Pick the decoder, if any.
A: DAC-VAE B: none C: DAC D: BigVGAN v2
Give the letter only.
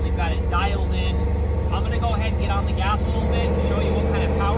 B